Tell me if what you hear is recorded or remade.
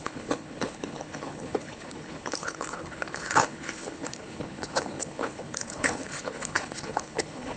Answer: remade